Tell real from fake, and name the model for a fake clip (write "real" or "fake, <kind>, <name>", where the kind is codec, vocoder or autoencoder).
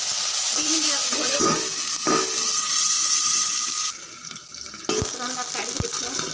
real